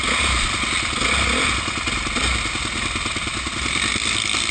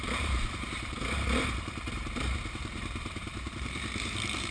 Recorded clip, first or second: first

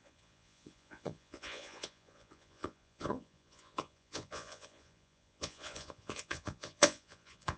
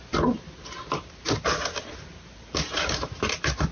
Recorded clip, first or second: second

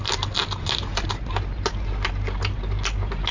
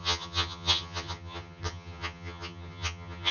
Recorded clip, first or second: first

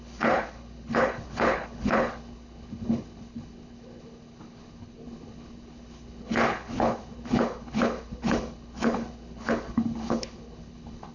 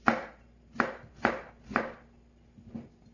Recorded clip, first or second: second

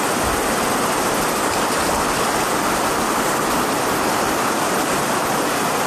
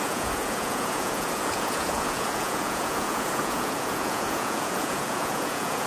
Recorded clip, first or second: first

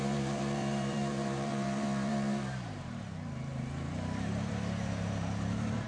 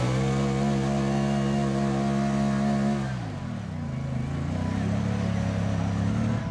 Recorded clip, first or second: second